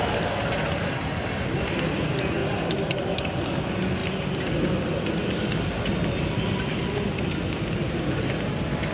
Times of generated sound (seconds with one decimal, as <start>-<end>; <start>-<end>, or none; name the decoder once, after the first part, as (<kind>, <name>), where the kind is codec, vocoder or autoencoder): none